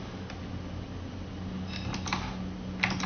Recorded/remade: recorded